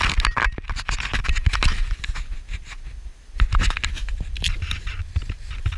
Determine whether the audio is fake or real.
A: real